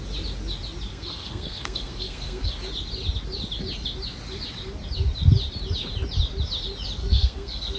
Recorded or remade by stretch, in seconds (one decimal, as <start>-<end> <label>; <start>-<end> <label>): 0.0-0.9 recorded; 0.9-2.5 remade; 2.5-7.0 recorded; 7.0-7.8 remade